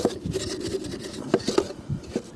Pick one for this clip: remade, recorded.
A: recorded